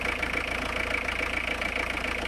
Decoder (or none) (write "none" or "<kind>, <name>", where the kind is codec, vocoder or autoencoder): none